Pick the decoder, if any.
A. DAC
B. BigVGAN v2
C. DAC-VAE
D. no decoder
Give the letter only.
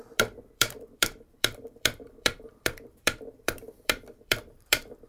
B